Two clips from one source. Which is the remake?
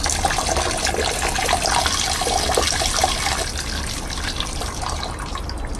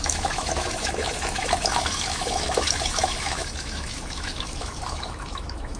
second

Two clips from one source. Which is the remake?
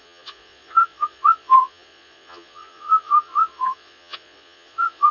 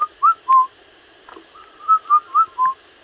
first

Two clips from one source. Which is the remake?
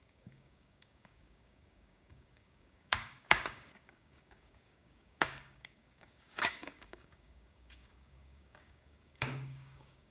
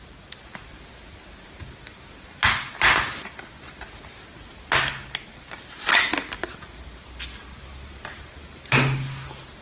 first